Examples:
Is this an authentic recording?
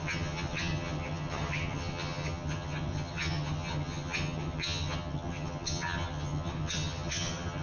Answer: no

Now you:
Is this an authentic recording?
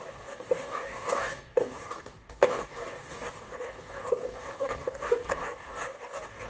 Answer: no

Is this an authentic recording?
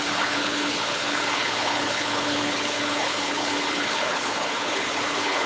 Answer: no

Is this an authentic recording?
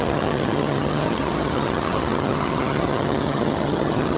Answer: no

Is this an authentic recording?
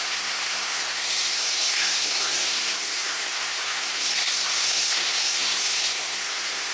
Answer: no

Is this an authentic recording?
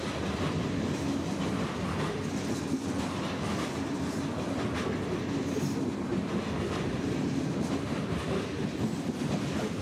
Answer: yes